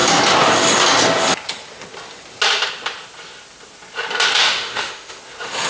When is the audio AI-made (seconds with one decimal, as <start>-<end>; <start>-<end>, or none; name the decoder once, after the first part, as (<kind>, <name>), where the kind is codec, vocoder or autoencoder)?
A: 4.4-5.2 (autoencoder, DAC-VAE)